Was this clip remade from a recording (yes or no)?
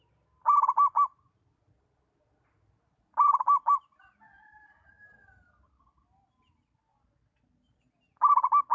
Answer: no